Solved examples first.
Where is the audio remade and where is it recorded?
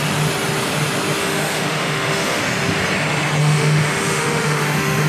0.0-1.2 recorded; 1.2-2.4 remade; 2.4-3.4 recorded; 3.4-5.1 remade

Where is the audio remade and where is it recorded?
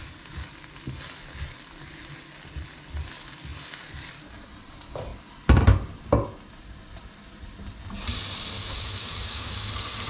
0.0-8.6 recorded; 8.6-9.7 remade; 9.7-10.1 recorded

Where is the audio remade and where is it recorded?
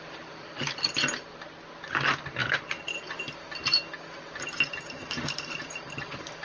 0.0-6.4 recorded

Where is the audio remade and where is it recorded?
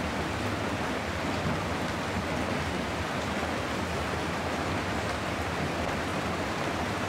0.0-7.1 recorded